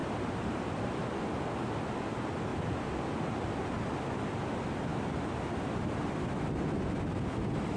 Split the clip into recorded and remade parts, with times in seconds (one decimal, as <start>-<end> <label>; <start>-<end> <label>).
0.0-0.9 remade; 0.9-2.5 recorded; 2.5-3.4 remade; 3.4-4.9 recorded; 4.9-7.8 remade